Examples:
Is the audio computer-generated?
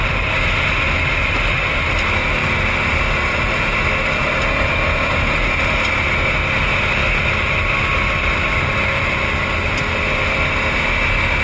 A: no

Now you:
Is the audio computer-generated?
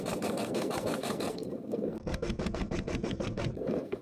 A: yes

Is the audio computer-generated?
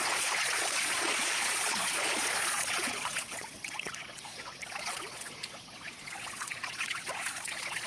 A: yes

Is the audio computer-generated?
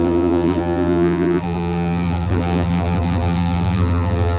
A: yes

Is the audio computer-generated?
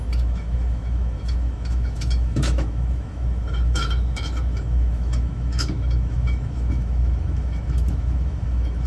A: yes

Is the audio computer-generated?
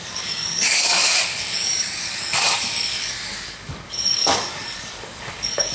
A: yes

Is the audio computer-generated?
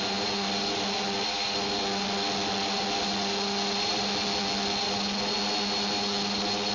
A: no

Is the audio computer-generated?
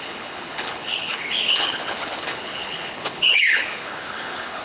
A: yes